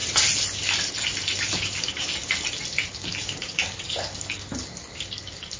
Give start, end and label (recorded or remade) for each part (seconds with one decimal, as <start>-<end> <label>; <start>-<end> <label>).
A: 0.0-1.5 recorded; 1.5-2.2 remade; 2.2-2.9 recorded; 2.9-5.6 remade